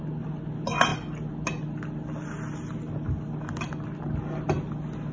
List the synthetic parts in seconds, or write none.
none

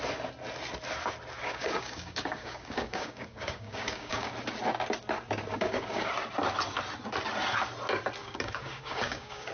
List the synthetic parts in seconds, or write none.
1.4-4.3; 5.5-6.1; 8.2-9.5

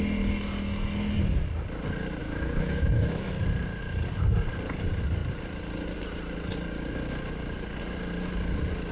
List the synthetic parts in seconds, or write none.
2.2-3.3

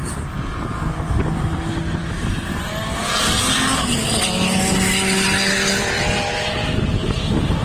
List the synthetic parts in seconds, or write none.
none

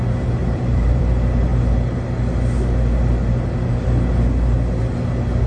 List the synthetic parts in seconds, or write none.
0.4-1.0